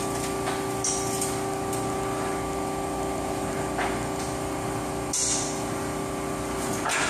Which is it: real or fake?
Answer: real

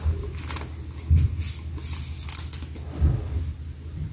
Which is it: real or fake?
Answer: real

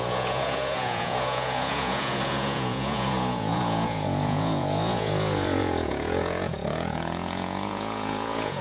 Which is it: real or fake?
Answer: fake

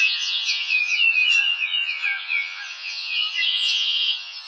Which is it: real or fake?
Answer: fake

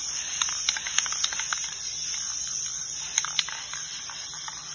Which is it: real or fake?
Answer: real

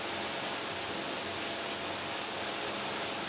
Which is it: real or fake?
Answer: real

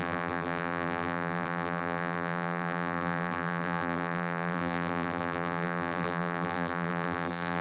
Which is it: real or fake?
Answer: fake